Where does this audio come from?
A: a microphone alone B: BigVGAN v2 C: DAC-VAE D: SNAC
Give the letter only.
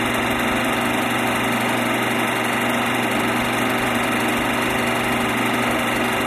A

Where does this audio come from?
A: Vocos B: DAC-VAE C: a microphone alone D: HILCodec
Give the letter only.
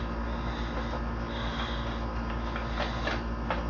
C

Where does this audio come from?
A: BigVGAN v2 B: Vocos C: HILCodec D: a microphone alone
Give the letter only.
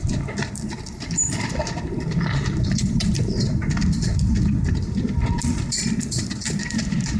A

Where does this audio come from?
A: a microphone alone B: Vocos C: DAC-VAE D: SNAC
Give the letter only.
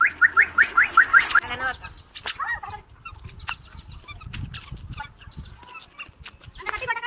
A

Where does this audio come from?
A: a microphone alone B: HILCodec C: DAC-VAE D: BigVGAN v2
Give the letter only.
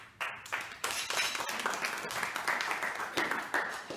A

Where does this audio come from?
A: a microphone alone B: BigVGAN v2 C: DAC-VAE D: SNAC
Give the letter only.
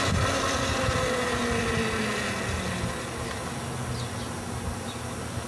A